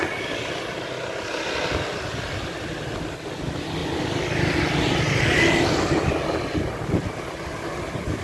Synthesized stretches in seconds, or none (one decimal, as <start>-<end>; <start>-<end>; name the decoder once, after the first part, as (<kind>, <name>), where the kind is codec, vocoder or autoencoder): none